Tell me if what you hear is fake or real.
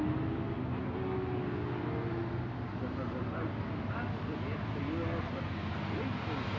real